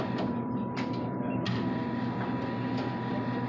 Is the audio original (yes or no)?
yes